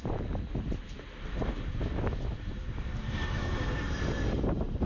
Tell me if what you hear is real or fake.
fake